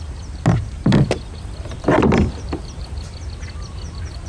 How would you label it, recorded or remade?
recorded